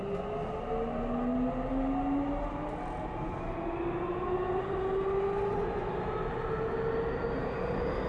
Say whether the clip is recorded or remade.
recorded